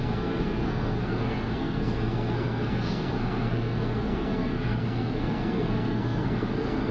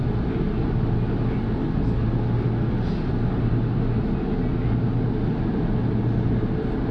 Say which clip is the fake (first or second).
first